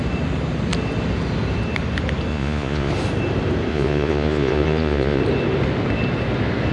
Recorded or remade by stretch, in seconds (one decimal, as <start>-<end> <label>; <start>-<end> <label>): 0.0-2.3 recorded; 2.3-2.9 remade; 2.9-3.7 recorded; 3.7-5.2 remade; 5.2-6.7 recorded